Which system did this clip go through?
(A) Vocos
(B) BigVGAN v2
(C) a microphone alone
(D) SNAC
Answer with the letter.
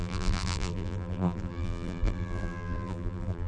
B